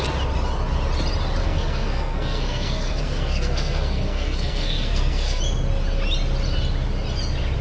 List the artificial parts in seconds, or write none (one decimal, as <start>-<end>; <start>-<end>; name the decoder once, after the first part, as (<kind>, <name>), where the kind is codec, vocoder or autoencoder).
1.4-5.4 (codec, SNAC)

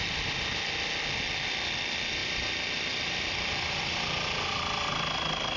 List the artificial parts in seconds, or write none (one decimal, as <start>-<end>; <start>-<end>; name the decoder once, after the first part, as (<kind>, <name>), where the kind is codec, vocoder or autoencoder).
none

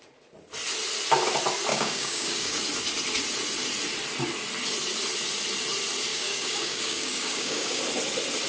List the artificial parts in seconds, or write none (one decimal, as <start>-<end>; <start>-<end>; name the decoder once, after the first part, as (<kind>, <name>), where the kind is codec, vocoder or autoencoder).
1.7-2.6 (codec, DAC); 6.1-7.8